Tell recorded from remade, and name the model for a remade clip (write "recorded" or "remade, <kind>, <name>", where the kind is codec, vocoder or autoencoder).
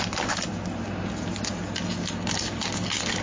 recorded